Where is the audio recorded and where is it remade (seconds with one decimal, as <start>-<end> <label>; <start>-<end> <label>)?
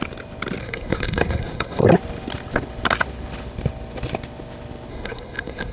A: 0.0-0.6 recorded; 0.6-1.8 remade; 1.8-4.9 recorded; 4.9-5.7 remade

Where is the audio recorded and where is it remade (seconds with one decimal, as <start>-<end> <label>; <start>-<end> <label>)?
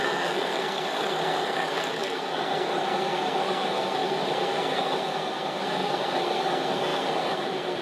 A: 0.0-7.8 remade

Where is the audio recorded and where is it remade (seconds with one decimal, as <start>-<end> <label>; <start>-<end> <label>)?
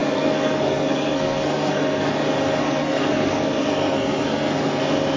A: 0.0-2.1 remade; 2.1-2.6 recorded; 2.6-4.8 remade; 4.8-5.2 recorded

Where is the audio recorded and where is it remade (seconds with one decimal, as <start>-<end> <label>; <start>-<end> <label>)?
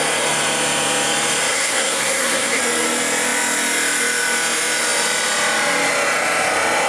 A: 0.0-1.5 recorded; 1.5-2.6 remade; 2.6-6.9 recorded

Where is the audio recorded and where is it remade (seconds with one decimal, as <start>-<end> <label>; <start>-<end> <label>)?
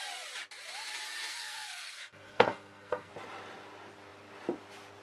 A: 0.0-1.3 recorded; 1.3-3.1 remade; 3.1-5.0 recorded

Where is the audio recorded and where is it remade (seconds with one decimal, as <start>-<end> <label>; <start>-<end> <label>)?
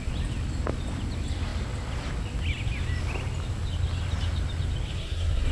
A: 0.0-4.9 recorded; 4.9-5.5 remade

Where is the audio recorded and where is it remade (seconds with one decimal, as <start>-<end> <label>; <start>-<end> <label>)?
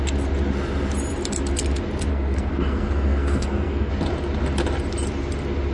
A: 0.0-2.1 recorded; 2.1-3.9 remade; 3.9-5.7 recorded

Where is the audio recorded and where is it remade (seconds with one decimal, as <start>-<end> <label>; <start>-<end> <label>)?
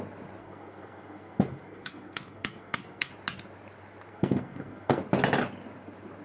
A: 0.0-0.4 recorded; 0.4-3.1 remade; 3.1-4.1 recorded; 4.1-5.0 remade; 5.0-6.2 recorded